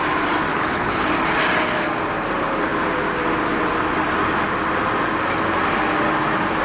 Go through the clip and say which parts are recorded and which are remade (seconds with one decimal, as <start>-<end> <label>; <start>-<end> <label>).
0.0-0.5 recorded; 0.5-1.1 remade; 1.1-6.6 recorded

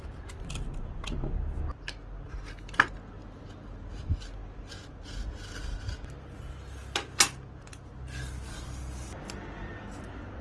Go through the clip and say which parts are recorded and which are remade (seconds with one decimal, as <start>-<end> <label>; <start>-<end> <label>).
0.0-10.4 recorded

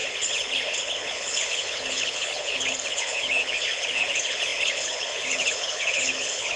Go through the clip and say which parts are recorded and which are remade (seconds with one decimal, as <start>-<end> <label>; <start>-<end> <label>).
0.0-6.6 remade

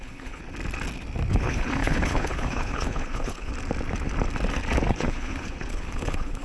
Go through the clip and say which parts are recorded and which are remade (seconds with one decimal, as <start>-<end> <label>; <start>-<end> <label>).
0.0-0.4 remade; 0.4-1.3 recorded; 1.3-3.5 remade; 3.5-4.9 recorded; 4.9-6.4 remade